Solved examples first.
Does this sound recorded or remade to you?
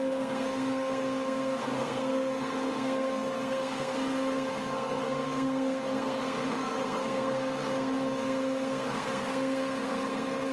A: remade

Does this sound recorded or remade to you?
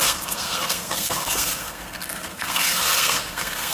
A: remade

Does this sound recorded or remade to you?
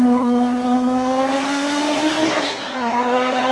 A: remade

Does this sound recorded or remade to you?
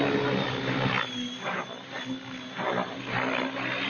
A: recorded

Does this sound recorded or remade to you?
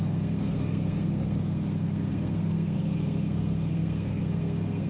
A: remade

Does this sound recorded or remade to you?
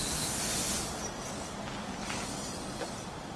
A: recorded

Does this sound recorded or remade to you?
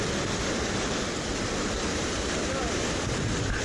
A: recorded